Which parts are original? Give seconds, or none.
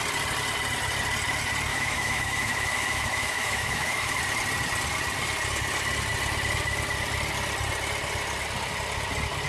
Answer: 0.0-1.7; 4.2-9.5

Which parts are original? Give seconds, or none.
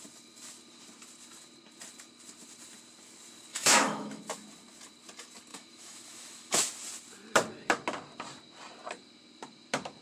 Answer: 0.0-3.5; 4.2-5.5; 6.7-10.0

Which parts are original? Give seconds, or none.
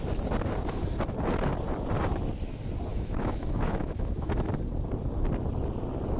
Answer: 0.0-2.9; 4.5-6.2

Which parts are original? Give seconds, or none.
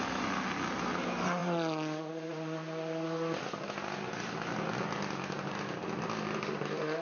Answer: 0.0-7.0